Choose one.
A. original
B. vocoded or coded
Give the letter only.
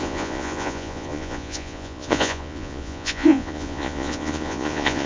B